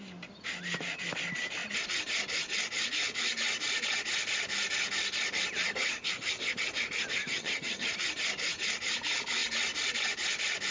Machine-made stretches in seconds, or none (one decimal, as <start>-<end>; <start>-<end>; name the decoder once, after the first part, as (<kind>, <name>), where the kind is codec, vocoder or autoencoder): 7.2-7.9 (vocoder, HiFi-GAN)